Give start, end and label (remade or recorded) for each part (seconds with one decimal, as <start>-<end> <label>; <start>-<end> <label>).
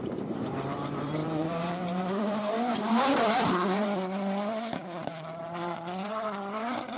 0.0-7.0 remade